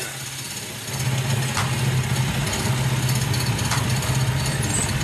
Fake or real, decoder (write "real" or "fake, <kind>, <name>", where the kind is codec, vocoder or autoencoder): real